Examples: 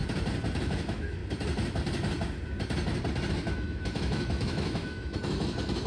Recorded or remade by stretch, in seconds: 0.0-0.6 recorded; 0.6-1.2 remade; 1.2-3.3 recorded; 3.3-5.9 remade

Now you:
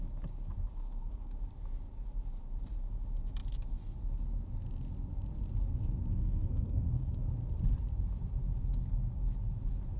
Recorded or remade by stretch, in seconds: 0.0-0.7 recorded; 0.7-1.3 remade; 1.3-6.2 recorded; 6.2-7.2 remade; 7.2-10.0 recorded

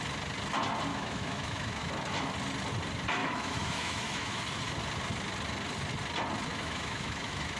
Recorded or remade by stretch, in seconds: 0.0-0.9 recorded; 0.9-1.9 remade; 1.9-3.2 recorded; 3.2-4.4 remade; 4.4-6.5 recorded; 6.5-7.6 remade

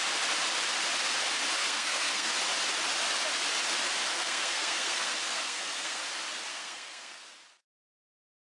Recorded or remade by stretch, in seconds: 0.0-1.6 recorded; 1.6-2.3 remade; 2.3-4.1 recorded; 4.1-6.0 remade; 6.0-6.5 recorded; 6.5-7.2 remade; 7.2-8.6 recorded

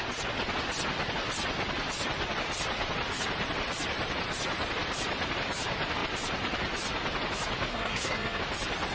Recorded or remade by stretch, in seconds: 0.0-7.7 recorded; 7.7-8.4 remade; 8.4-8.9 recorded